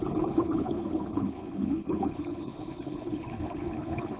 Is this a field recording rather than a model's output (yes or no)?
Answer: no